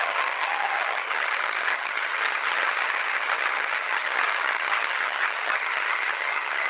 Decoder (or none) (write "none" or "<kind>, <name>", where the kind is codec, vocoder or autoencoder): vocoder, HiFi-GAN